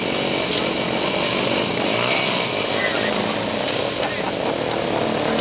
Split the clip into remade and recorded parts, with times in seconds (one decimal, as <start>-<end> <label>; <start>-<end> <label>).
0.0-5.4 recorded